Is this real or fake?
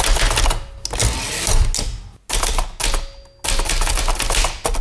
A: real